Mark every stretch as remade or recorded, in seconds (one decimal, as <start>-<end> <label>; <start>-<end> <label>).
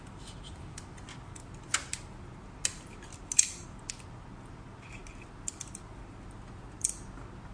0.0-7.5 recorded